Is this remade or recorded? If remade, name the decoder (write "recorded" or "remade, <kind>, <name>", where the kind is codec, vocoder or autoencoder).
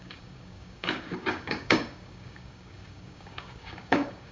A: remade, codec, DAC